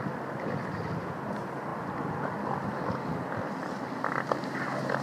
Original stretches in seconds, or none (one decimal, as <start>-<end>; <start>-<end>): 0.0-5.0